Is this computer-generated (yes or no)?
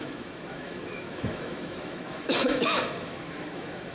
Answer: yes